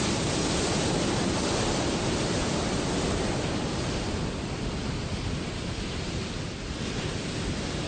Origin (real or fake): real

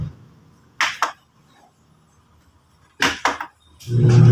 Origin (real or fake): real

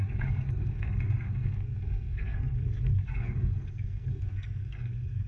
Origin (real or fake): fake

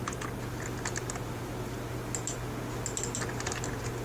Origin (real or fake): real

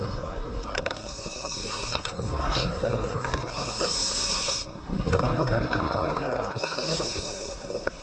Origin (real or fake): fake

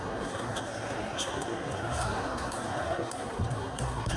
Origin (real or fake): fake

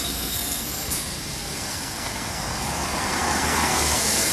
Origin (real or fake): fake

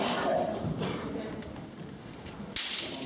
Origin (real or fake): real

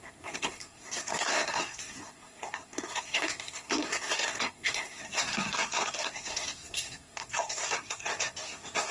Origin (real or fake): fake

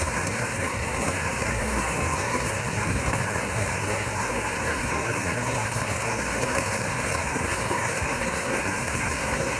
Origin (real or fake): fake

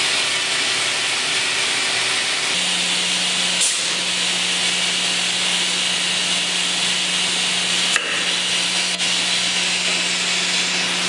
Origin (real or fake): real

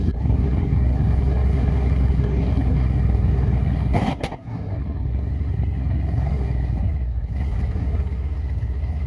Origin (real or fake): fake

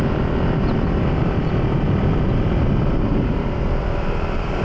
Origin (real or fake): real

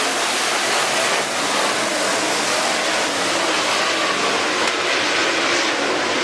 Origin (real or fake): real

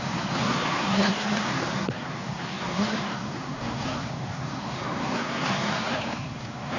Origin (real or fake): fake